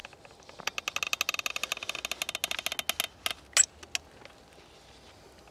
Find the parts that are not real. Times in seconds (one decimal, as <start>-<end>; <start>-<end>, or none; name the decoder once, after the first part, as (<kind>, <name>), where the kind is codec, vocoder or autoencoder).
none